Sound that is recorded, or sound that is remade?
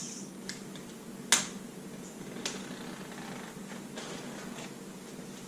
recorded